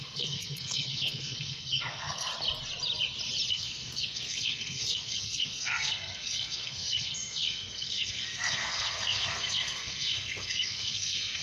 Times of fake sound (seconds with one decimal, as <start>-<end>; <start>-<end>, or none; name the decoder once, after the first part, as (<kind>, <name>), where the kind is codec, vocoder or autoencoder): 0.0-2.3 (codec, SNAC); 3.5-11.4